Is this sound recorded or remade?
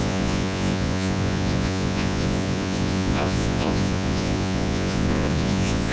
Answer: remade